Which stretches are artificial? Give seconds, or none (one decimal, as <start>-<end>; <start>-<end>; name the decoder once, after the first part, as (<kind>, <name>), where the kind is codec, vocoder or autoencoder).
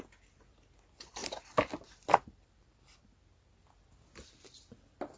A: 1.2-3.0 (vocoder, BigVGAN v2)